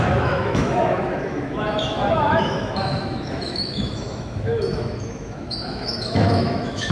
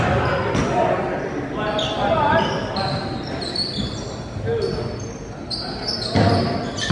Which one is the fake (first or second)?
first